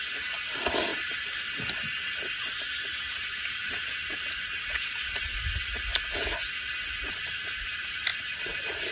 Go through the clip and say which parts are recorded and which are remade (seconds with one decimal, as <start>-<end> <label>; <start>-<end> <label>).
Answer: 0.0-8.9 recorded